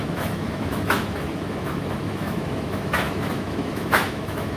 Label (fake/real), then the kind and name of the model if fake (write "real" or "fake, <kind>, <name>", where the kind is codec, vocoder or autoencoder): fake, autoencoder, DAC-VAE